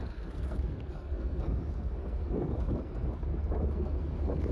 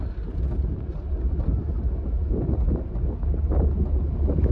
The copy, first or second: first